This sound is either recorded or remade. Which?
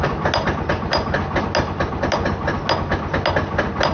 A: recorded